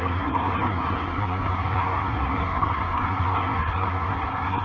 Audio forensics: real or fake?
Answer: fake